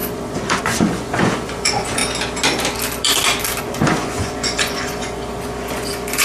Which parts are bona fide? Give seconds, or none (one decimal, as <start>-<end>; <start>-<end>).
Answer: 2.0-3.6